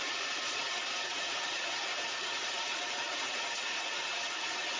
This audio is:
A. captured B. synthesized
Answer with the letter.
B